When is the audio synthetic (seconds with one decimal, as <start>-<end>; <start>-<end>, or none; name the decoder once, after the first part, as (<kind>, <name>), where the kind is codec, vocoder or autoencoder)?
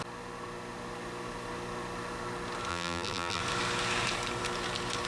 2.7-3.4 (vocoder, BigVGAN v2)